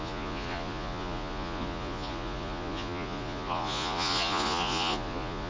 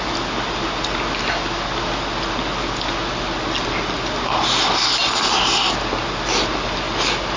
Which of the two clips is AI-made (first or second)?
first